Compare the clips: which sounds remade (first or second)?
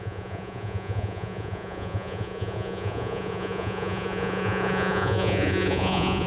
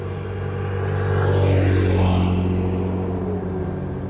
first